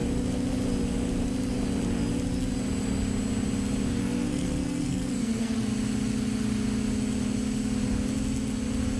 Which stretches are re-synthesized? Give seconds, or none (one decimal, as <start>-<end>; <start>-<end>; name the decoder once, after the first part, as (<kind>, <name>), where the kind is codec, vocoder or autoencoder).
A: 3.9-5.6 (codec, SNAC)